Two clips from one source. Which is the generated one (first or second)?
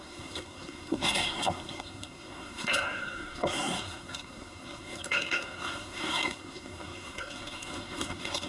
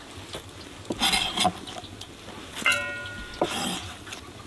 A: first